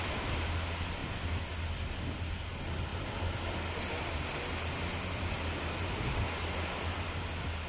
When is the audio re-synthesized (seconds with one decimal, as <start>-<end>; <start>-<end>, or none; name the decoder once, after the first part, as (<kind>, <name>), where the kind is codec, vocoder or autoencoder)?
none